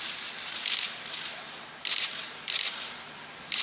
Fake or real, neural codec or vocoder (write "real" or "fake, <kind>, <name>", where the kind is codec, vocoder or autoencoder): real